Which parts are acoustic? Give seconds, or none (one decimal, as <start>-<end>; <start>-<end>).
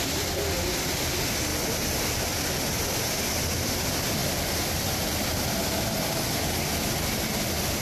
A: 0.0-7.8